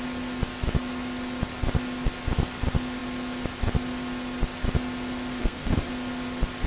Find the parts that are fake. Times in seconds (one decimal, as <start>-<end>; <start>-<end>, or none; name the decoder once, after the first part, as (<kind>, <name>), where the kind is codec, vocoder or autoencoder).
5.4-5.9 (codec, SNAC)